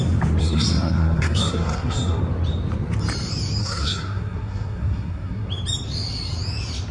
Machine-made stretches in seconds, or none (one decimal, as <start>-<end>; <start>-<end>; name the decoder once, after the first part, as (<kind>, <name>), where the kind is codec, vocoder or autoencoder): 0.4-2.2 (codec, SNAC); 3.6-5.5